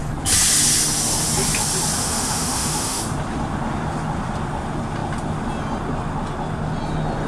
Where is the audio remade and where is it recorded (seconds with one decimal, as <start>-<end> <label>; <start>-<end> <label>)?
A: 0.0-2.0 recorded; 2.0-3.0 remade; 3.0-7.3 recorded